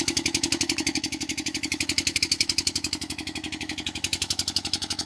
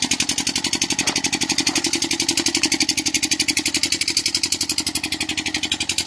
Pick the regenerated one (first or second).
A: first